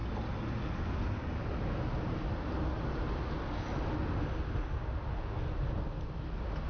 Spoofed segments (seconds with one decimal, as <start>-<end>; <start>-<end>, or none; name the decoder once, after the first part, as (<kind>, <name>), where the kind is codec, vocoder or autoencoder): none